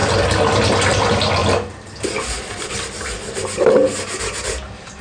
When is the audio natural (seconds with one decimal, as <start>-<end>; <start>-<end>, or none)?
0.0-5.0